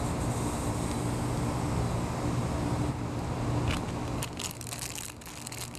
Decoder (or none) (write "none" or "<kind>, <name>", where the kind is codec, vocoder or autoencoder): none